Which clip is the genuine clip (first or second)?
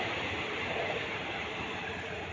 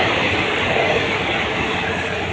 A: first